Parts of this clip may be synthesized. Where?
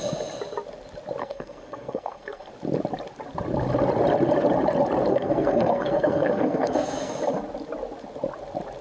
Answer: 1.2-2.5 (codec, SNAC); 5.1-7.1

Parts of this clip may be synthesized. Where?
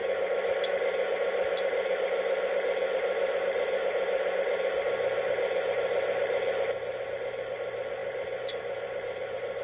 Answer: 0.7-9.6 (vocoder, BigVGAN v2)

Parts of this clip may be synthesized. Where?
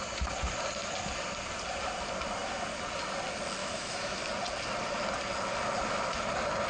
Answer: 3.6-4.2 (autoencoder, DAC-VAE)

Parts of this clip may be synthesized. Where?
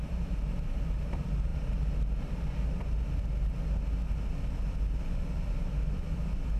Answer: none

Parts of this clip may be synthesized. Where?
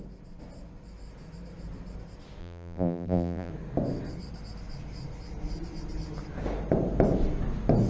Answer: 2.4-3.5 (vocoder, BigVGAN v2)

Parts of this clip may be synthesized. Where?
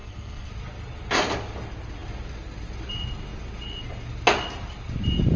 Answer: 0.0-0.5 (codec, SNAC)